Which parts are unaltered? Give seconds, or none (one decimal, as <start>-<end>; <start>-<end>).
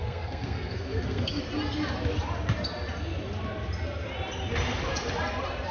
1.4-5.7